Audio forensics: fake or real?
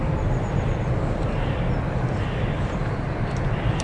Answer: real